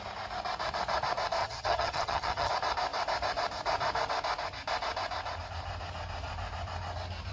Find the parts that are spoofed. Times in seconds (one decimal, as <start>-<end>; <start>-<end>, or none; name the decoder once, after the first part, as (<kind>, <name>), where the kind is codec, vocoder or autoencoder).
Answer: 1.4-2.5 (vocoder, HiFi-GAN)